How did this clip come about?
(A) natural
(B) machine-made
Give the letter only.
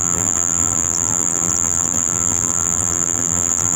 B